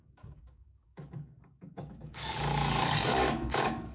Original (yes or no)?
no